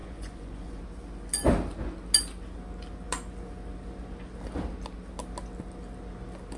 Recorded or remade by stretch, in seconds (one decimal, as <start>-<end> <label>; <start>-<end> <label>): 0.0-0.8 remade; 0.8-6.6 recorded